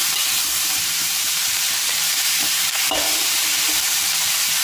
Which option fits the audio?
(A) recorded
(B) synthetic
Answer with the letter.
B